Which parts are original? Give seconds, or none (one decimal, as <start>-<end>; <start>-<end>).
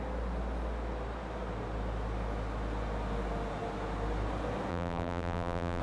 0.0-4.7